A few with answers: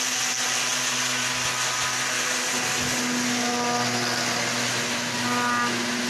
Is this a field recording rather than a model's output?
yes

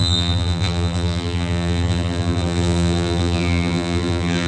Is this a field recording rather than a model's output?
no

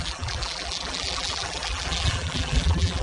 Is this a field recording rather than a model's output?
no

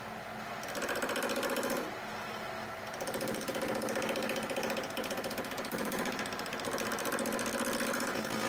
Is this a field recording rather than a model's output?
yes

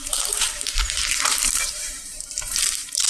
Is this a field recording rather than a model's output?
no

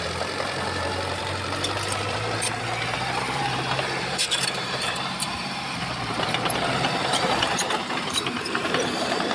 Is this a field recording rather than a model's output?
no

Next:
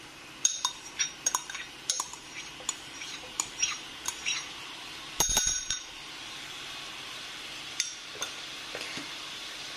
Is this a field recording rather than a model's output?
no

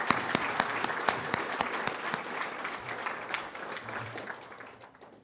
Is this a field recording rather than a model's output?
no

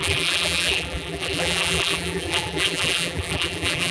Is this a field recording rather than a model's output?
no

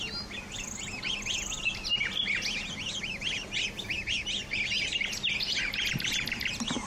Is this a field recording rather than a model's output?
yes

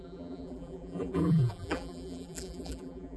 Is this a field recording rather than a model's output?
no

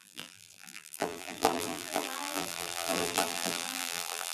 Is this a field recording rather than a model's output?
no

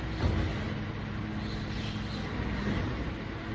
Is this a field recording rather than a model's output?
yes